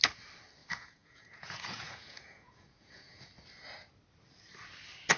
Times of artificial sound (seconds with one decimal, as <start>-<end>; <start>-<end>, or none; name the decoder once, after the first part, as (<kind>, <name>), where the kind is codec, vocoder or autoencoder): 0.6-3.3 (vocoder, Vocos)